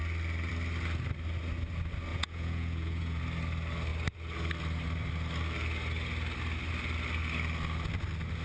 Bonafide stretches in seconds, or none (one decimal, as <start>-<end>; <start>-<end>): 0.0-2.1; 3.2-8.4